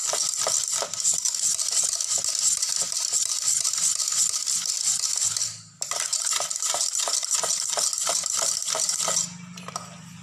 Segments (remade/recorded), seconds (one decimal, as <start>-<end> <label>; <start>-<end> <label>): 0.0-10.2 recorded